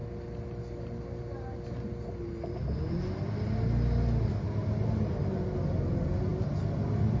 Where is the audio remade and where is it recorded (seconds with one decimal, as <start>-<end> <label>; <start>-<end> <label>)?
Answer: 0.0-7.2 recorded